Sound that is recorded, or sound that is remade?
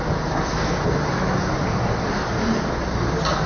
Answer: recorded